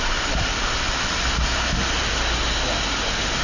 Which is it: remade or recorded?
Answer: recorded